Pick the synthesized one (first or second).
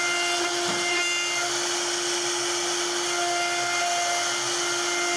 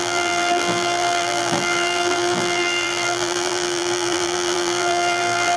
second